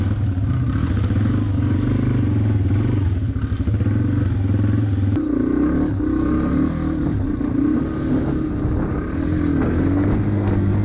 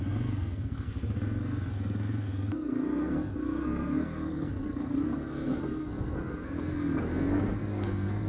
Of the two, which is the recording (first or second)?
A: first